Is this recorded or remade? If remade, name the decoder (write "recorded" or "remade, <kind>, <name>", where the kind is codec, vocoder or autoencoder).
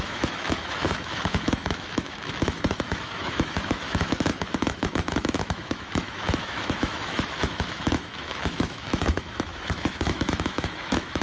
remade, autoencoder, DAC-VAE